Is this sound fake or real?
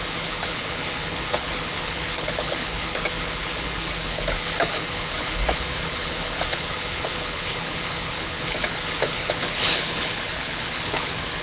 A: fake